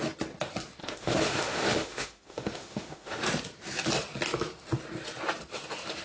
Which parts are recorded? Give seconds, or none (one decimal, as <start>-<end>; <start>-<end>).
0.0-0.8; 3.2-6.0